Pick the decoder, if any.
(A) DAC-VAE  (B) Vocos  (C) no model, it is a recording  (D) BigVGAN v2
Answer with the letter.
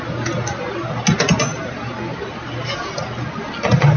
C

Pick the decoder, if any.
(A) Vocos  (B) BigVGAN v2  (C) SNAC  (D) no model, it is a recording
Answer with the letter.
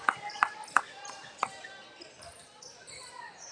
B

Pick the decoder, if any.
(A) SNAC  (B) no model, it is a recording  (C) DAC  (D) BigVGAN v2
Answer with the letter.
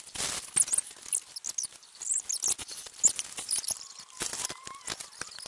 B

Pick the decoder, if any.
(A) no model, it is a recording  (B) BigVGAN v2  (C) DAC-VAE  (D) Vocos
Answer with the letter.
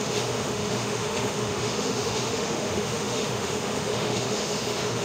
C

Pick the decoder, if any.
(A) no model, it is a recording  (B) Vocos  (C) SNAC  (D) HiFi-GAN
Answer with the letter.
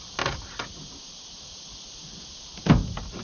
A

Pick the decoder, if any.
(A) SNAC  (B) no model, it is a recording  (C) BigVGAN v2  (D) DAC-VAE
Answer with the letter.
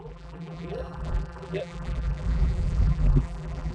C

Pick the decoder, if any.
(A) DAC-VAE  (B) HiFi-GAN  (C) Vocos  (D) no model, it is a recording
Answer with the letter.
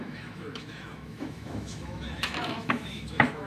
A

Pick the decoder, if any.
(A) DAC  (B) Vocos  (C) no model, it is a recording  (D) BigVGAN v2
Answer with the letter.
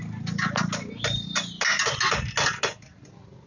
C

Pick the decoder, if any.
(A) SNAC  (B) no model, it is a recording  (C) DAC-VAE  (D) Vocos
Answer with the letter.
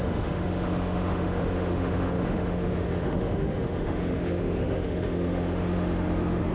C